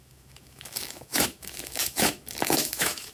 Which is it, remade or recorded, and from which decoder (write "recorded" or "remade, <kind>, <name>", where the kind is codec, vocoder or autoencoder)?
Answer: remade, autoencoder, DAC-VAE